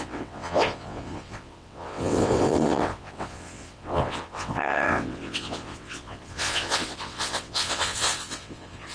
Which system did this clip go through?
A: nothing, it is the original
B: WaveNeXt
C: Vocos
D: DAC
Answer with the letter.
B